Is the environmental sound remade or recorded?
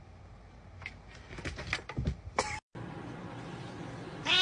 recorded